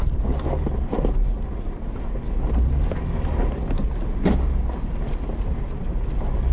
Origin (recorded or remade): recorded